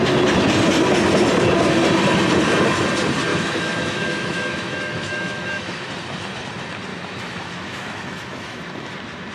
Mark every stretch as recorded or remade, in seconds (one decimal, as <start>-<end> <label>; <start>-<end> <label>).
0.0-3.3 recorded; 3.3-5.9 remade; 5.9-6.9 recorded; 6.9-8.6 remade; 8.6-9.3 recorded